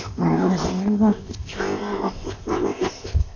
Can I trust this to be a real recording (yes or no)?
no